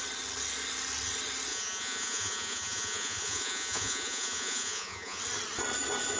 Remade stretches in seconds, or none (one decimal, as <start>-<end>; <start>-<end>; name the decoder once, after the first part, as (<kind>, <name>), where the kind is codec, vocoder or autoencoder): 1.5-5.2 (vocoder, Vocos)